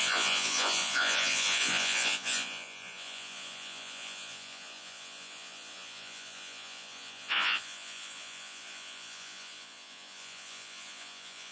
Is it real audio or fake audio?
fake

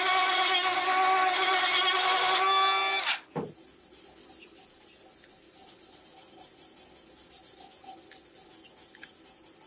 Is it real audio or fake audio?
real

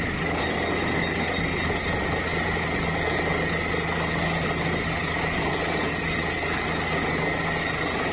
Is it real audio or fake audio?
real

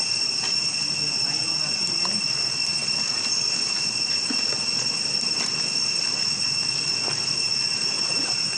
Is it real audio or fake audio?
real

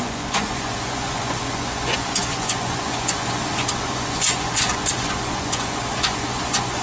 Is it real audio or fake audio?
fake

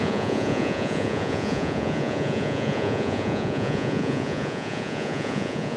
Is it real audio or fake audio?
fake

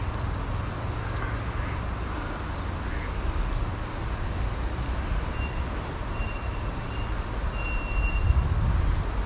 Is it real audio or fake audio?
real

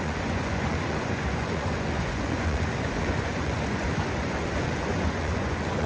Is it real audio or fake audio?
fake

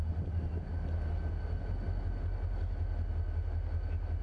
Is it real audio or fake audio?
real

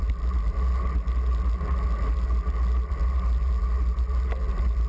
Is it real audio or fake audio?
real